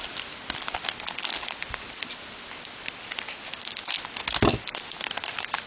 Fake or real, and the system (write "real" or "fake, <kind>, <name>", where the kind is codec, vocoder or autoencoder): real